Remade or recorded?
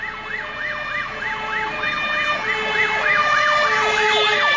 recorded